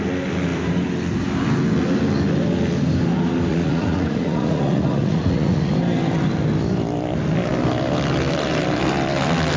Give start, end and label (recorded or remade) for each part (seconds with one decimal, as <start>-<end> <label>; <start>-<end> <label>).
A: 0.0-3.5 recorded; 3.5-5.7 remade; 5.7-9.6 recorded